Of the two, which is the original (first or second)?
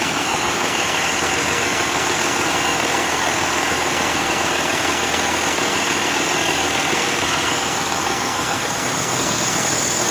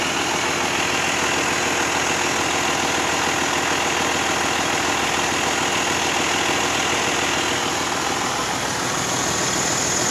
second